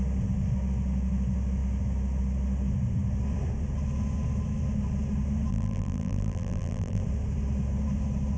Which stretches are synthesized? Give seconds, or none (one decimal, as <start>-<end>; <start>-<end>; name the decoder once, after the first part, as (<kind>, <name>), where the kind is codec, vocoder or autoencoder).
5.5-7.0 (vocoder, BigVGAN v2)